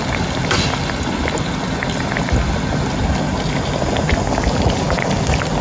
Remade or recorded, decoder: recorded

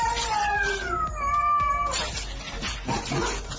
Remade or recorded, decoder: recorded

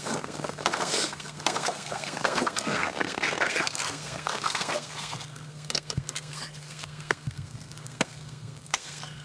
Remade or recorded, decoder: remade, codec, SNAC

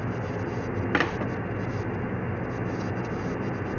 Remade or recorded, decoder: recorded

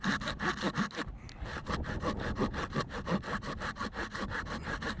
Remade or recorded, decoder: recorded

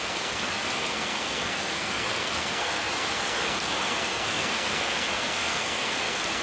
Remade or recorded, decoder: remade, codec, SNAC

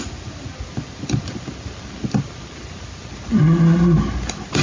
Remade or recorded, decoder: recorded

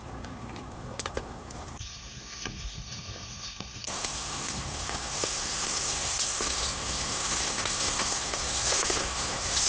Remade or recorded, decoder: remade, codec, SNAC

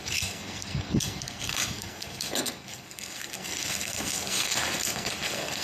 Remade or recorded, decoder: remade, codec, SNAC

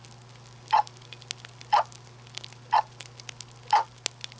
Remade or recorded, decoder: recorded